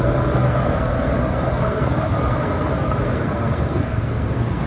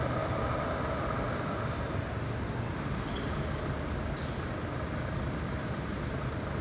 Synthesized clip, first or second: first